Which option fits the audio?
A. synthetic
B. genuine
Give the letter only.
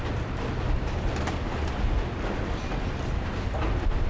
B